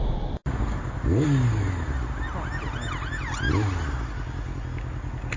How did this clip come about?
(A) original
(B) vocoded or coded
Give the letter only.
A